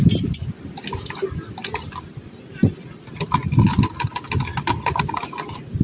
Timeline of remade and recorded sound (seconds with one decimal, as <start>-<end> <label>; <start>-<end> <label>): 0.0-5.8 recorded